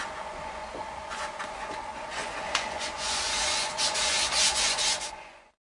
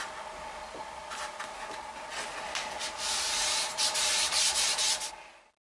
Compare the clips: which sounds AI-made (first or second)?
first